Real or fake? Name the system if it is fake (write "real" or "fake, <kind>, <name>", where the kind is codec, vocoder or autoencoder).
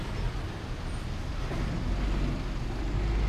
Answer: real